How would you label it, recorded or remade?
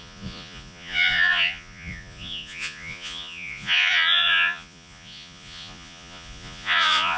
remade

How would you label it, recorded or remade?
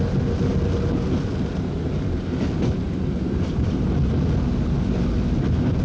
recorded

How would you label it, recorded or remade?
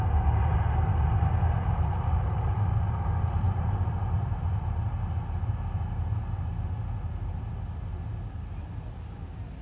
recorded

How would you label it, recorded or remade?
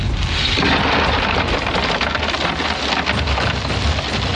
recorded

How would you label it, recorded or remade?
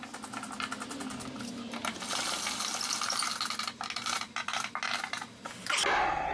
recorded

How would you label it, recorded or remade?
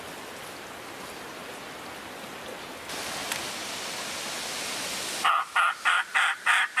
recorded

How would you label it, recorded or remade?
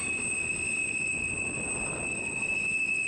recorded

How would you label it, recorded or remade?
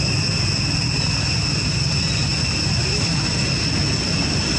recorded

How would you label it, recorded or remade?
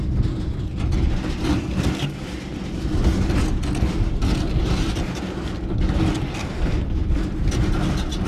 recorded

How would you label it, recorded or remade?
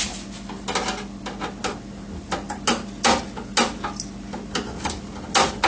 recorded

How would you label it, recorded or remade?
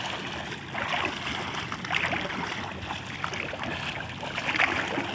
recorded